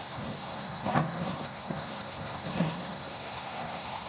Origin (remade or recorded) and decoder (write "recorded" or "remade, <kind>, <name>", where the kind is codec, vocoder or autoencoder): remade, codec, SNAC